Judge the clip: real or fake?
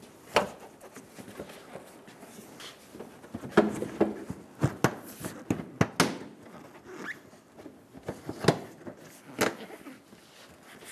real